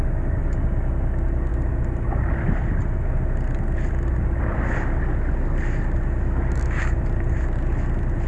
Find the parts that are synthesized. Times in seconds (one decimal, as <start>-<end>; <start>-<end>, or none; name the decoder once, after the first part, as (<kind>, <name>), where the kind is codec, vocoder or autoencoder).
none